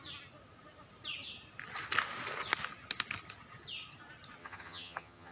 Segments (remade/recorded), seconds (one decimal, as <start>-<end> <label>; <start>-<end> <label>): 0.0-4.4 recorded; 4.4-5.3 remade